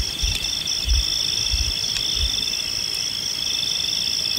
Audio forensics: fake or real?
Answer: real